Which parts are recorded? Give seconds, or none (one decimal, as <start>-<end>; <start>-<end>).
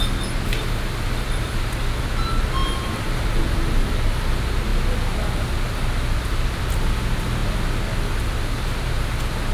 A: 0.0-2.6; 3.4-9.5